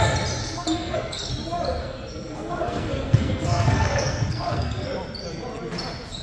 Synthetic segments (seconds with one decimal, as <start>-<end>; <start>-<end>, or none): 0.4-1.3; 1.8-4.9